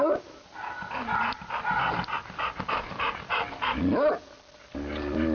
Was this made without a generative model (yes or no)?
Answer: yes